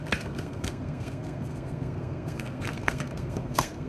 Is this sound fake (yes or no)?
yes